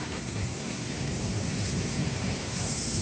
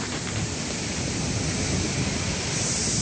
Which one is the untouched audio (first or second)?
second